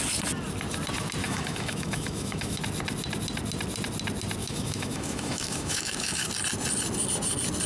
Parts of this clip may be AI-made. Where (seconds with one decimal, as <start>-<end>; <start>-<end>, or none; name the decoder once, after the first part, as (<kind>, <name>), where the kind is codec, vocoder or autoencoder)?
1.2-2.6 (autoencoder, DAC-VAE); 4.4-6.3